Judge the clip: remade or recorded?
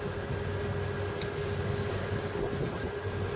recorded